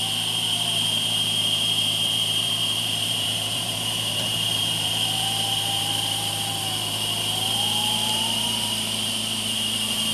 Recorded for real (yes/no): no